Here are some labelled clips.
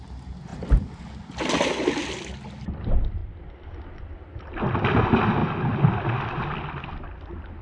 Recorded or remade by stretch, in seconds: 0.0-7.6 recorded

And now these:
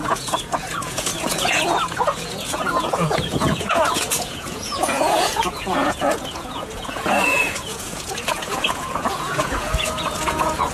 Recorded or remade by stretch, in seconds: 0.0-10.7 remade

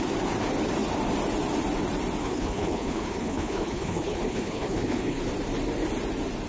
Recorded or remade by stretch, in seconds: 0.0-2.2 recorded; 2.2-5.2 remade; 5.2-6.5 recorded

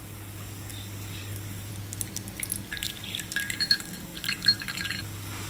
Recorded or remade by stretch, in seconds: 0.0-1.7 remade; 1.7-2.7 recorded; 2.7-5.5 remade

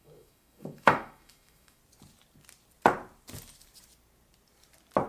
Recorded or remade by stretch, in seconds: 0.0-1.8 remade; 1.8-5.1 recorded

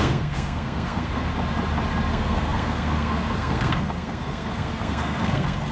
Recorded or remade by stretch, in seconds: 0.0-1.3 remade; 1.3-2.1 recorded; 2.1-5.7 remade

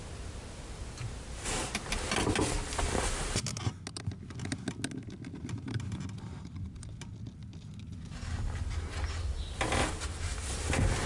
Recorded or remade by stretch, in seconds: 0.0-11.1 recorded